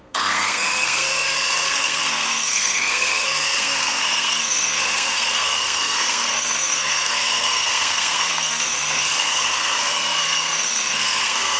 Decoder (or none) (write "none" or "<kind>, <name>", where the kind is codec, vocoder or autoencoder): codec, SNAC